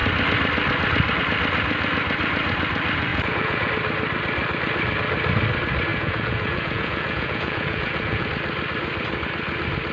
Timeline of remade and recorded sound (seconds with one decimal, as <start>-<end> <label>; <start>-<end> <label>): 0.0-3.1 recorded; 3.1-3.7 remade; 3.7-5.9 recorded; 5.9-8.3 remade; 8.3-9.9 recorded